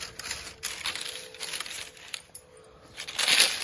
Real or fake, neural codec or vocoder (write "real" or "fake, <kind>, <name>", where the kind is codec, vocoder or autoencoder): real